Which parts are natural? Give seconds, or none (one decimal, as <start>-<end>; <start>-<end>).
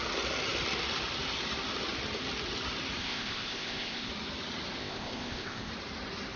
0.0-3.0; 4.1-4.8; 5.7-6.4